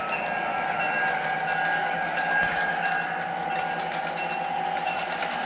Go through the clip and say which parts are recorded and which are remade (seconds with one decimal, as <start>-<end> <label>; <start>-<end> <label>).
0.0-1.7 recorded; 1.7-2.3 remade; 2.3-5.5 recorded